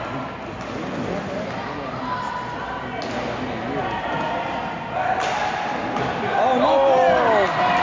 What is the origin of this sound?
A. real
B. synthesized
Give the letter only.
A